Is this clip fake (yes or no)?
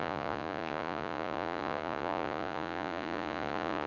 yes